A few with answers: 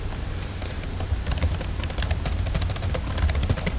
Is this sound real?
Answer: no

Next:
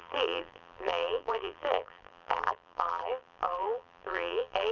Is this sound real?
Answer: no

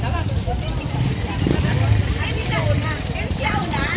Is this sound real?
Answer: no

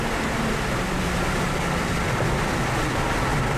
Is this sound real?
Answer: no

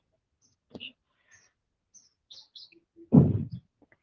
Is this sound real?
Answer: yes